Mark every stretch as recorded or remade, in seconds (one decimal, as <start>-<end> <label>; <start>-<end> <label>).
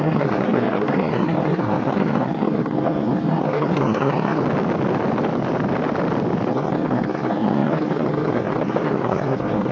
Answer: 0.0-4.4 remade; 4.4-6.5 recorded; 6.5-9.7 remade